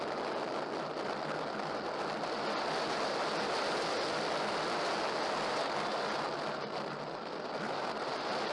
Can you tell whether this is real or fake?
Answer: real